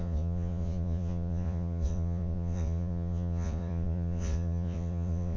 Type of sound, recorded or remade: remade